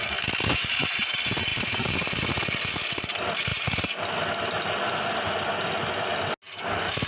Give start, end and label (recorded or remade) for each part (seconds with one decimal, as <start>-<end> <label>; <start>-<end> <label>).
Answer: 0.0-1.5 recorded; 1.5-2.3 remade; 2.3-7.1 recorded